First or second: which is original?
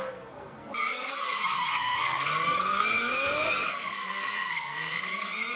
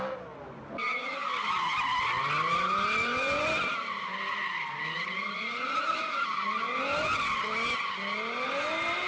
second